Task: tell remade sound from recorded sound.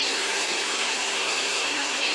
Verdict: remade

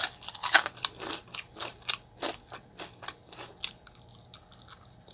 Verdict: recorded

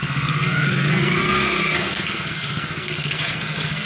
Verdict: remade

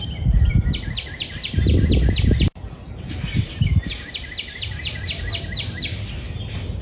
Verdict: recorded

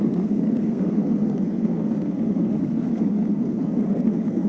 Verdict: remade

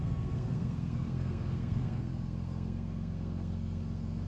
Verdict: remade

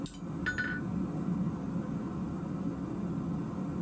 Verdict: recorded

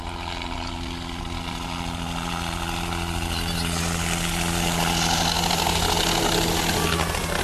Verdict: recorded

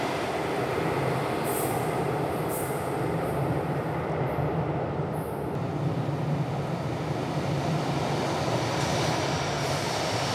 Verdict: recorded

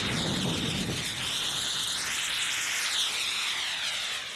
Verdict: recorded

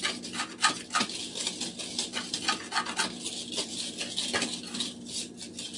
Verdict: recorded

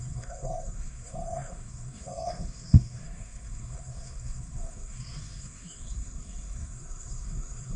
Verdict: remade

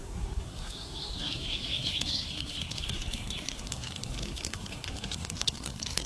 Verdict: remade